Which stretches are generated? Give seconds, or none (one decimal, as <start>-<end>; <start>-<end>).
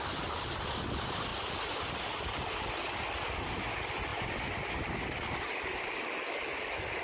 none